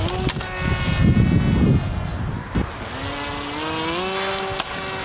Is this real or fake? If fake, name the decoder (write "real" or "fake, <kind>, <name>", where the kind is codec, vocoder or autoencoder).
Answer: real